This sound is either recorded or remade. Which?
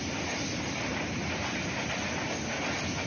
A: recorded